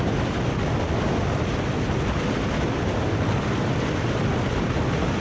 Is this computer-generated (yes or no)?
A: no